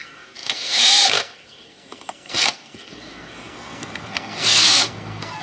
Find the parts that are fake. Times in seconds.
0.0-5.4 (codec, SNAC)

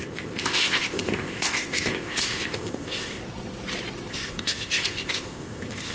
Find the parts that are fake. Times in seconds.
0.0-3.2 (codec, ZipCodec); 4.1-5.9

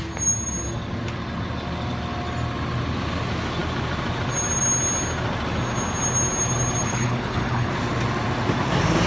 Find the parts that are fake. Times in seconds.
6.9-7.7 (codec, HILCodec)

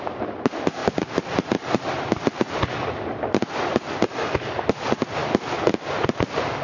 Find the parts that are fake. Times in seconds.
none